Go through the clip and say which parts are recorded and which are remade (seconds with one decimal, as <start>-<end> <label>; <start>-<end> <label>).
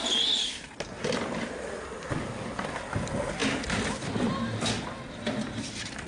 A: 0.0-6.1 recorded